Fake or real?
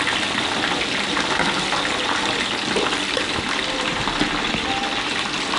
real